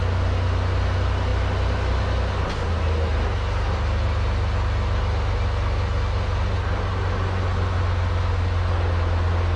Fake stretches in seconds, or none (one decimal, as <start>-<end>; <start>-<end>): none